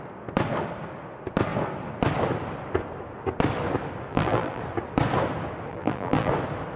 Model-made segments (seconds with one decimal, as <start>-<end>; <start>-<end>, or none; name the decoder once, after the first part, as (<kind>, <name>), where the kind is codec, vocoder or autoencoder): 4.1-4.6 (vocoder, BigVGAN v2); 5.7-6.3